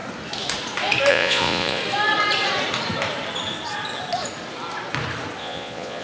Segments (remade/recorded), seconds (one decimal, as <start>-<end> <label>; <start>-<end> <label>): 0.0-1.1 recorded; 1.1-1.8 remade; 1.8-5.4 recorded; 5.4-6.0 remade